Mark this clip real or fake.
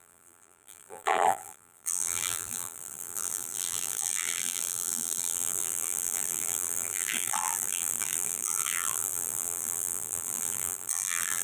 fake